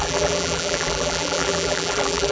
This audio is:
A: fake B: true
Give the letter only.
A